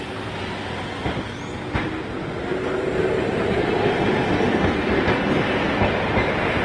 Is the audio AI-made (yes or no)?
no